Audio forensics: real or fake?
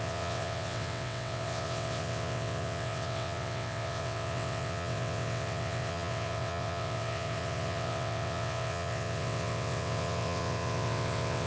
fake